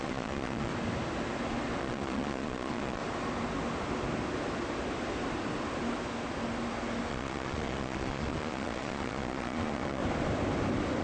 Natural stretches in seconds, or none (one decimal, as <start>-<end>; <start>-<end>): 0.7-1.8; 3.0-7.1; 10.0-11.0